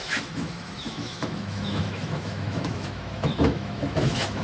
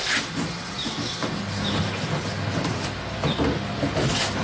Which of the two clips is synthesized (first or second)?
first